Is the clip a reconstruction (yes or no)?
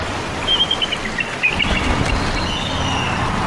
no